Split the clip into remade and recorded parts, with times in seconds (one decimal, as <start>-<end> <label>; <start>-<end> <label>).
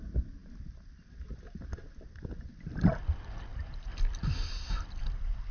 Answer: 0.0-5.5 recorded